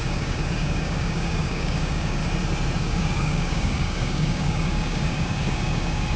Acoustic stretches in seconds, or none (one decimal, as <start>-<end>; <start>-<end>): 2.2-2.8